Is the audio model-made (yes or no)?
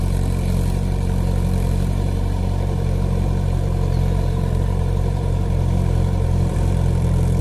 yes